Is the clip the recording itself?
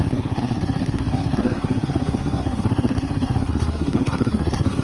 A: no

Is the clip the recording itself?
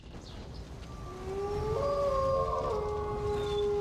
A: yes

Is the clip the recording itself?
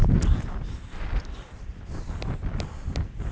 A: yes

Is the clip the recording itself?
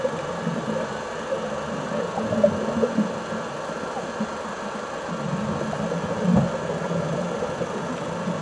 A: yes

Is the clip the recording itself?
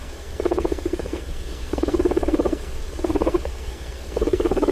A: no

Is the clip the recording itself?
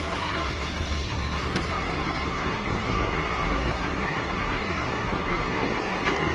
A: no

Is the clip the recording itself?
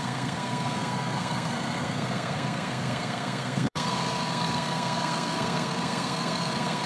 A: no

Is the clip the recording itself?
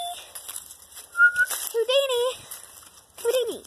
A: yes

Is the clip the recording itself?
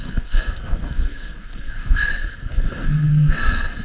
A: no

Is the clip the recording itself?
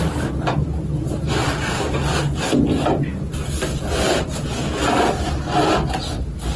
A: yes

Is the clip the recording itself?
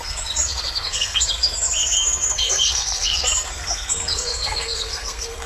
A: no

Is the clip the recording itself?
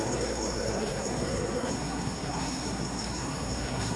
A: no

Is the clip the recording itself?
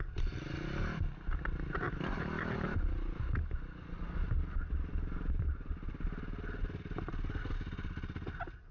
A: yes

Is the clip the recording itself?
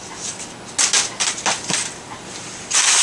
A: yes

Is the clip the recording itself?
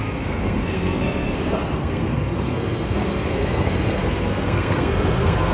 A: no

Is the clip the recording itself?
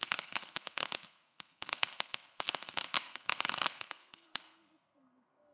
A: no